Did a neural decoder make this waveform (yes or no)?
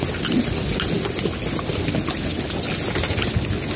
no